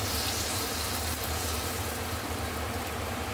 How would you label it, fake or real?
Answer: fake